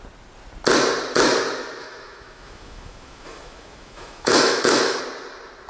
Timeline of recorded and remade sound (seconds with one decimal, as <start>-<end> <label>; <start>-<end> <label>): 0.0-1.8 recorded; 1.8-5.0 remade; 5.0-5.7 recorded

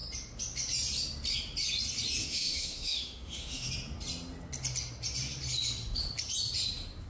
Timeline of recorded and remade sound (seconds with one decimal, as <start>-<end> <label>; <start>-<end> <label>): 0.0-2.2 recorded; 2.2-3.7 remade; 3.7-7.1 recorded

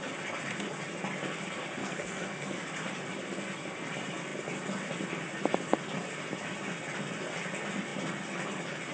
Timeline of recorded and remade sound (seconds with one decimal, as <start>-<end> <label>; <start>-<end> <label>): 0.0-1.8 recorded; 1.8-2.6 remade; 2.6-8.9 recorded

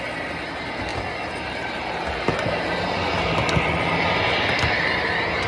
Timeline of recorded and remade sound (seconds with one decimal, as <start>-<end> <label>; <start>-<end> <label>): 0.0-5.5 recorded

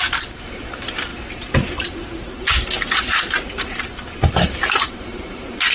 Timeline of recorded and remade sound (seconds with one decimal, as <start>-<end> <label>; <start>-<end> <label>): 0.0-5.7 remade

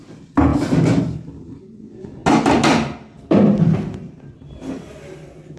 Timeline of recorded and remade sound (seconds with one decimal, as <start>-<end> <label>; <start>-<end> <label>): 0.0-5.6 recorded